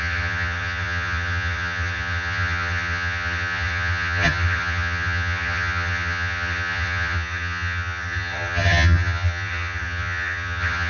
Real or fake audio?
fake